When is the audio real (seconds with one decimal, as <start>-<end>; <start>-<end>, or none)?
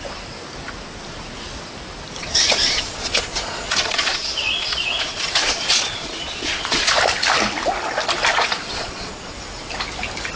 0.0-2.2; 6.9-8.3; 9.2-10.4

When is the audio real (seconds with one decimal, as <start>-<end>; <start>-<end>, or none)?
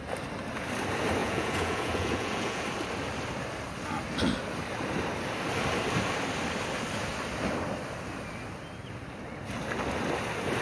0.0-1.2; 2.6-10.6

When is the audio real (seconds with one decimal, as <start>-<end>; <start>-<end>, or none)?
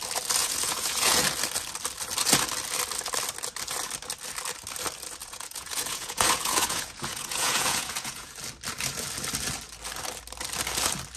0.0-0.4; 1.2-5.2; 8.3-11.2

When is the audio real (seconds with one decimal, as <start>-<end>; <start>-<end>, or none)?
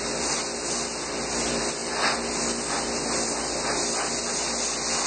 0.0-5.1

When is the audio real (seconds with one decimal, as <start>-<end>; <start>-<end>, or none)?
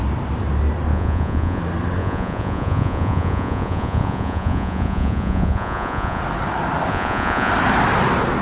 0.0-0.9; 1.6-2.0; 6.2-6.9; 7.5-8.4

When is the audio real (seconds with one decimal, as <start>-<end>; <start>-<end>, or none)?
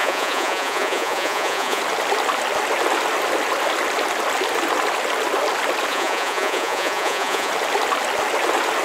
1.8-5.9; 7.5-8.8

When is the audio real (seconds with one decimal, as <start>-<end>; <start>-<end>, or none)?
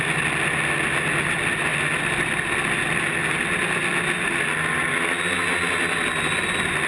0.0-6.9